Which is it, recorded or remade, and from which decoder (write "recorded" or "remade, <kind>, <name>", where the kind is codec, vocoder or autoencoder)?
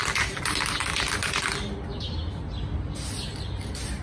recorded